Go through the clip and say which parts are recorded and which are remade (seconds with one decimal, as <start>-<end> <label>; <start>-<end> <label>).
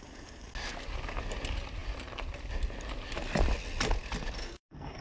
0.0-4.4 recorded; 4.4-5.0 remade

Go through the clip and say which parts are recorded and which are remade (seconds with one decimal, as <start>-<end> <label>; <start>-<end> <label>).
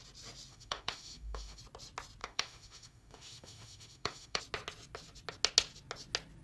0.0-0.5 recorded; 0.5-1.6 remade; 1.6-2.2 recorded; 2.2-4.4 remade; 4.4-6.4 recorded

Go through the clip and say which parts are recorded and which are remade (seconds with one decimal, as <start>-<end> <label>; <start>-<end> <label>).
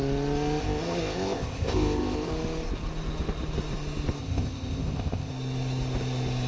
0.0-0.6 recorded; 0.6-2.3 remade; 2.3-4.2 recorded; 4.2-5.3 remade; 5.3-6.5 recorded